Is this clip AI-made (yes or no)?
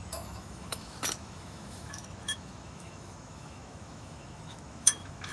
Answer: yes